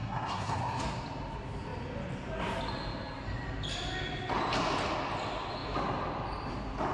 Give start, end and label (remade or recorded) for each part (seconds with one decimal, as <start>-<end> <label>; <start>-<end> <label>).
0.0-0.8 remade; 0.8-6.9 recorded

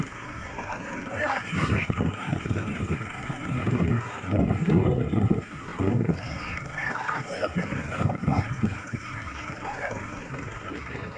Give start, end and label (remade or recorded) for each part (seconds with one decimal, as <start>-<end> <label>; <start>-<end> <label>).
0.0-11.2 remade

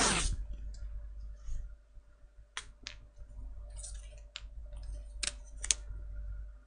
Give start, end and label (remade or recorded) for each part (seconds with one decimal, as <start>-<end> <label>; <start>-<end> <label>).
0.0-6.7 recorded

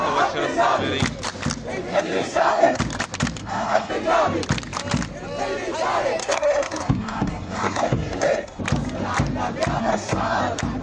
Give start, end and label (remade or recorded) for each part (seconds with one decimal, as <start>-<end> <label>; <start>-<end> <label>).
0.0-1.9 recorded; 1.9-2.8 remade; 2.8-3.4 recorded; 3.4-3.9 remade; 3.9-6.2 recorded; 6.2-8.6 remade; 8.6-9.8 recorded; 9.8-10.4 remade; 10.4-10.8 recorded